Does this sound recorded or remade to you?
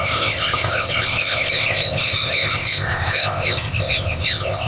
remade